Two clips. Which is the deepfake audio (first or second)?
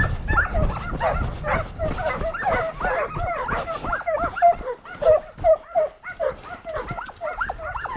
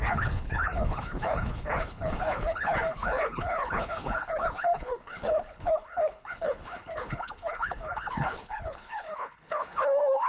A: second